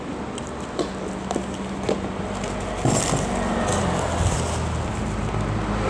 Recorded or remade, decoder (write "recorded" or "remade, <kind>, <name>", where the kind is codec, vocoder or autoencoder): recorded